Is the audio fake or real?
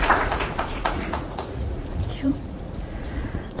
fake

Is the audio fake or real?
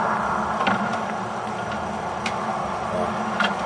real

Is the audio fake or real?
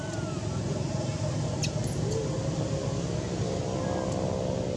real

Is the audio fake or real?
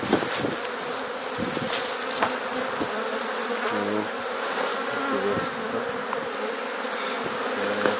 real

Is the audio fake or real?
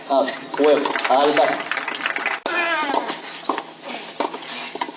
real